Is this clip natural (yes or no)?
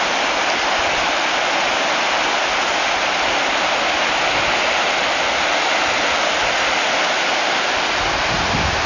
yes